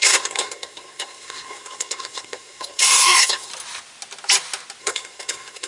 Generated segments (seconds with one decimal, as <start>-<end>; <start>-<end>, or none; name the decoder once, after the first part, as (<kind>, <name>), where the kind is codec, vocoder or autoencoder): 0.0-3.5 (codec, SNAC); 4.8-5.7